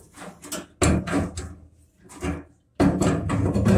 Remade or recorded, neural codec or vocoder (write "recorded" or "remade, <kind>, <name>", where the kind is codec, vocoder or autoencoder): recorded